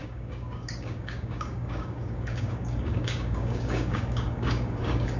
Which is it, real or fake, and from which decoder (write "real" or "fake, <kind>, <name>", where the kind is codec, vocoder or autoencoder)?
fake, codec, DAC